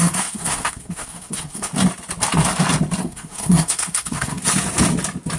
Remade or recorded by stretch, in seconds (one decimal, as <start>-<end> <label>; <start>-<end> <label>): 0.0-1.7 remade; 1.7-3.0 recorded; 3.0-4.4 remade; 4.4-5.4 recorded